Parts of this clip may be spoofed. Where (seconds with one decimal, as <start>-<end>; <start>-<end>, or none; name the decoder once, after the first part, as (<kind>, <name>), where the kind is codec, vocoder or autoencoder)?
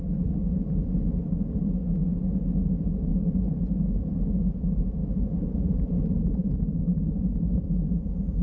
5.0-6.5 (vocoder, BigVGAN v2); 6.9-7.5